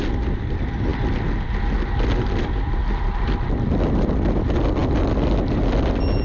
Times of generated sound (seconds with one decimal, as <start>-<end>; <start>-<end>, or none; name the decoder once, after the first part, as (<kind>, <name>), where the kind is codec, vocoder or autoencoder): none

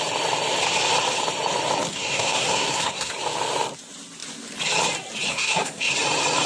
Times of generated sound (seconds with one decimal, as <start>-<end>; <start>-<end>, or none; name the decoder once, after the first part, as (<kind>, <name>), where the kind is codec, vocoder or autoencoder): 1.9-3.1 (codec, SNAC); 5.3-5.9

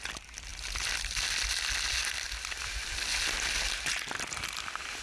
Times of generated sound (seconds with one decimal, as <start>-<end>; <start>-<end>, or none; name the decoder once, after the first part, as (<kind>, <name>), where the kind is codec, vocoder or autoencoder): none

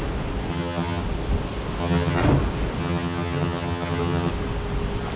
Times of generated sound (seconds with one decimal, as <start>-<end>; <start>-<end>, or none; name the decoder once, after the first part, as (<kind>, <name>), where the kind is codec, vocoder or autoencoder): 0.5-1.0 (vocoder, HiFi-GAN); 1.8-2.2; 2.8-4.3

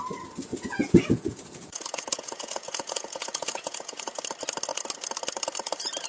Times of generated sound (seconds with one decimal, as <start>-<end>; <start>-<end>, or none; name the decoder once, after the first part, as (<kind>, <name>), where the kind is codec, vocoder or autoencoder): 0.5-4.2 (vocoder, Vocos)